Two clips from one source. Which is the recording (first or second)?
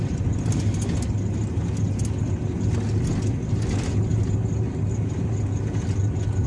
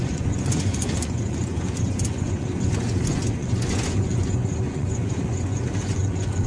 first